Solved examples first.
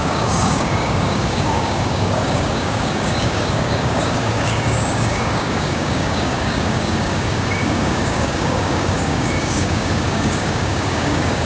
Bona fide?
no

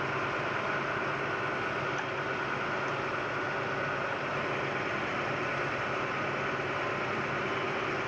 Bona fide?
yes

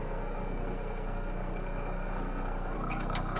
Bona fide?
no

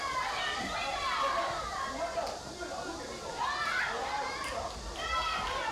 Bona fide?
yes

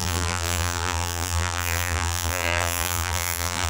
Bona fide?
no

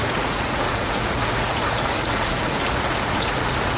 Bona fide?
no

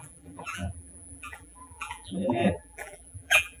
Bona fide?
no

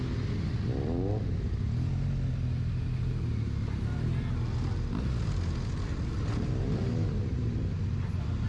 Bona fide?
yes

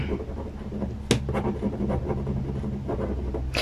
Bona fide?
yes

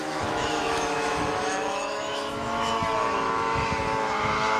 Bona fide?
no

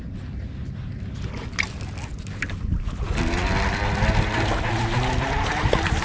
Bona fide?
yes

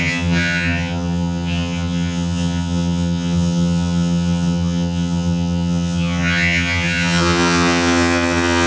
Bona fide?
no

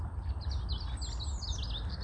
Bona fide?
yes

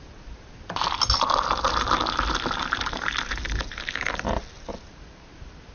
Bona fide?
yes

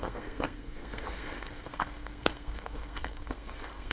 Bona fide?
no